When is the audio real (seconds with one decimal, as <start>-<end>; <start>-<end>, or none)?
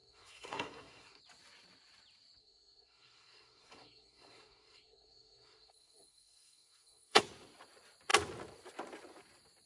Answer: 1.2-2.4; 7.2-9.7